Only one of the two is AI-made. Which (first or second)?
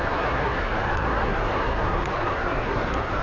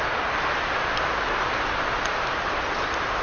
first